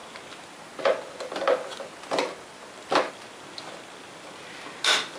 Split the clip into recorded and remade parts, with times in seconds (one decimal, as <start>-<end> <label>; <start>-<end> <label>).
0.0-5.2 recorded